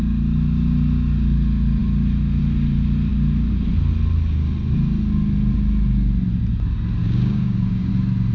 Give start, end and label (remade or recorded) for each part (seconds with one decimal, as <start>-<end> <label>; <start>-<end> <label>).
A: 0.0-7.0 recorded; 7.0-7.9 remade; 7.9-8.3 recorded